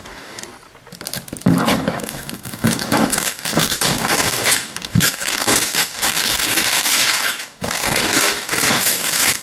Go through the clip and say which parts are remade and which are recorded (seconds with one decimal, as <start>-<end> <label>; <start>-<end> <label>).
0.0-0.4 remade; 0.4-1.7 recorded; 1.7-9.4 remade